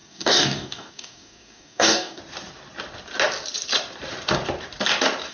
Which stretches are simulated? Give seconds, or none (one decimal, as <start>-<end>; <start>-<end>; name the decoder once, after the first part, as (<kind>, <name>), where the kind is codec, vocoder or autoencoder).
0.0-2.2 (codec, DAC)